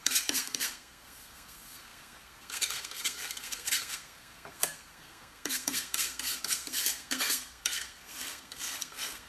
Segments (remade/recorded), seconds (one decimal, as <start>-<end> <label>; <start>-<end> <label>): 0.0-9.3 remade